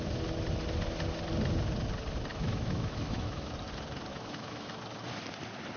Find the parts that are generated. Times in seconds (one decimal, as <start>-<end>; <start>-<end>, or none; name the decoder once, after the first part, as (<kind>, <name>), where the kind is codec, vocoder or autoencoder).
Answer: 2.3-3.5 (autoencoder, DAC-VAE); 4.1-4.8